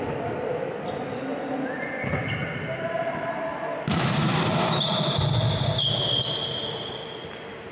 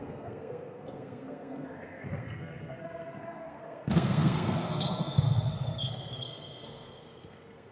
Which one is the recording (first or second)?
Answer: first